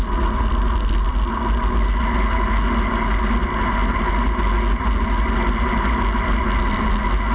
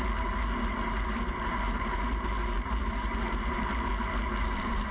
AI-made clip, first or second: second